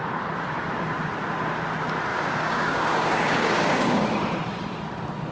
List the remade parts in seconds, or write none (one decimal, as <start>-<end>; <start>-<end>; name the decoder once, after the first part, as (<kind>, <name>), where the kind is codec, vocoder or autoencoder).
2.1-4.0 (codec, DAC)